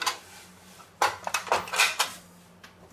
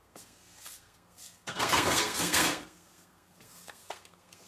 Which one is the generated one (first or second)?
second